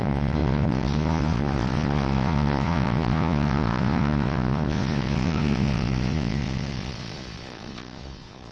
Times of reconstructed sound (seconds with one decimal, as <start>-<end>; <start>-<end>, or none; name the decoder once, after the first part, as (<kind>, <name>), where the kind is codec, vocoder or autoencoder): 0.0-8.5 (vocoder, Vocos)